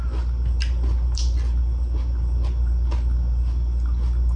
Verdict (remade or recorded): recorded